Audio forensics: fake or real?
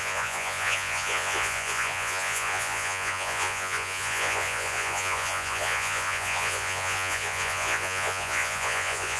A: fake